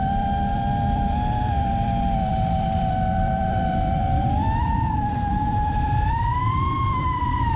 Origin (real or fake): fake